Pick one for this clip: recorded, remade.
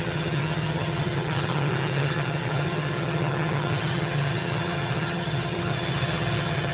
remade